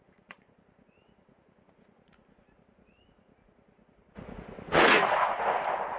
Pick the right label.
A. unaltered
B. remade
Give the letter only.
B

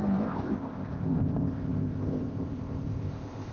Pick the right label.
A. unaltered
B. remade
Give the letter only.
B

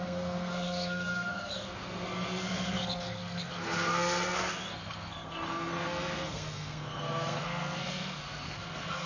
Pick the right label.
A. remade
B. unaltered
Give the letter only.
A